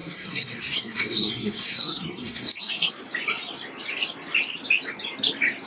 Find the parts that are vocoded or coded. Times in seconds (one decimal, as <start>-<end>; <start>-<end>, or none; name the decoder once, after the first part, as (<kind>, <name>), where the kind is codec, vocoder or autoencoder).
0.0-2.9 (codec, SNAC)